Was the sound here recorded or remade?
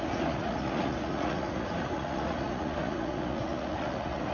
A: remade